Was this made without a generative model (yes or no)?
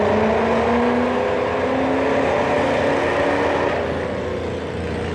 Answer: yes